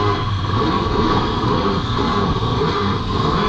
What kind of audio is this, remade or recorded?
remade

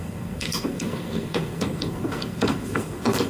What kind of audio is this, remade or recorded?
remade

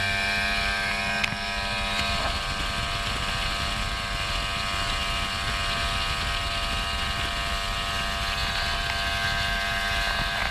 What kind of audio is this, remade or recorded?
recorded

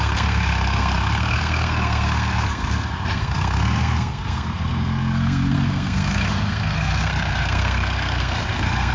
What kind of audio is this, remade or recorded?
remade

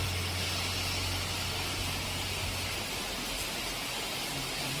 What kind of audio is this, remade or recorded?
recorded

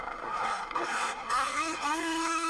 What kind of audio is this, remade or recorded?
remade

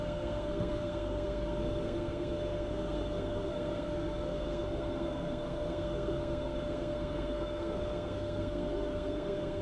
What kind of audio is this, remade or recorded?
remade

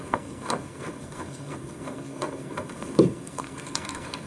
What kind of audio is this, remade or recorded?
remade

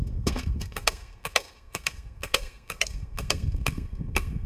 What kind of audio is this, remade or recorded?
remade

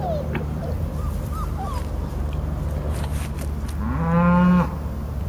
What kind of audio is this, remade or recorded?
recorded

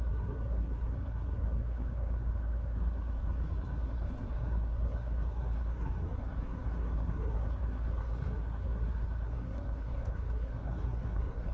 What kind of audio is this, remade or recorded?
remade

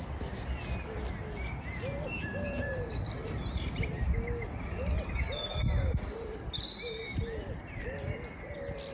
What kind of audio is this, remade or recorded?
recorded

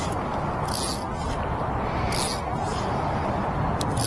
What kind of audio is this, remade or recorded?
recorded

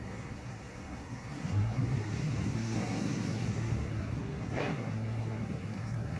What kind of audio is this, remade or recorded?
remade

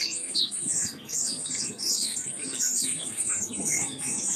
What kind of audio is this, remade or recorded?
remade